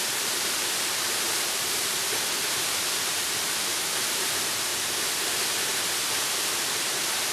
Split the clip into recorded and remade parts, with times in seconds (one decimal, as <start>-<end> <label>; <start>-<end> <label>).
0.0-4.7 remade; 4.7-6.7 recorded; 6.7-7.3 remade